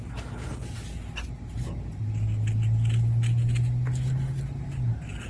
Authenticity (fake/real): real